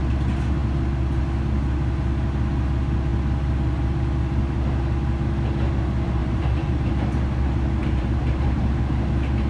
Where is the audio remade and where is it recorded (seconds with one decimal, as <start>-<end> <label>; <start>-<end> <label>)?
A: 0.0-6.2 recorded; 6.2-6.9 remade; 6.9-7.8 recorded; 7.8-8.8 remade; 8.8-9.5 recorded